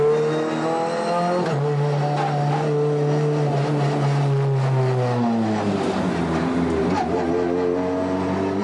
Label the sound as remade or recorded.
recorded